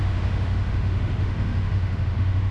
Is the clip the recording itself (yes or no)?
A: no